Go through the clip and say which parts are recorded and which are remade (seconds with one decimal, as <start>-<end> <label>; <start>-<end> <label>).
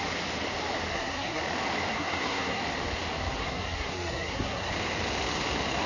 0.0-0.9 recorded; 0.9-1.4 remade; 1.4-1.9 recorded; 1.9-2.6 remade; 2.6-3.4 recorded; 3.4-4.7 remade; 4.7-5.9 recorded